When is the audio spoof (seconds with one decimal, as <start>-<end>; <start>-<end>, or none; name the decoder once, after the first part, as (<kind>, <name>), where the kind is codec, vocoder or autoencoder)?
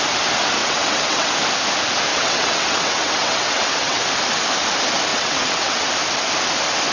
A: 0.6-1.3 (vocoder, WaveNeXt); 2.1-4.0; 5.1-5.9